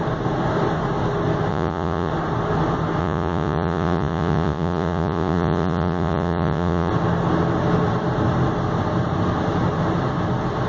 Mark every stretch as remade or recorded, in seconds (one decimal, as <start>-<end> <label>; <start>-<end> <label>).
0.0-1.5 recorded; 1.5-2.1 remade; 2.1-3.0 recorded; 3.0-6.9 remade; 6.9-10.7 recorded